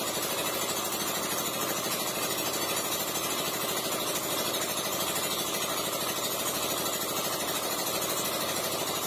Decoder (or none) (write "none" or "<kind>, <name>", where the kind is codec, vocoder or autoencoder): none